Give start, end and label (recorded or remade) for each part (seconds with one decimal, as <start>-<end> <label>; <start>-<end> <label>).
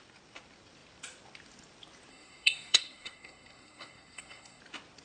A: 0.0-2.1 recorded; 2.1-4.6 remade; 4.6-5.0 recorded